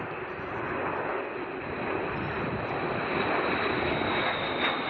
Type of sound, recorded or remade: recorded